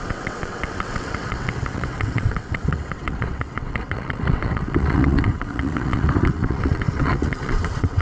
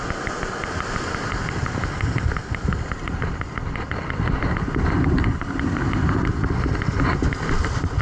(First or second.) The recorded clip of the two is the second